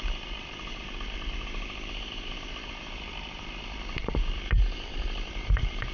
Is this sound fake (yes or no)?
yes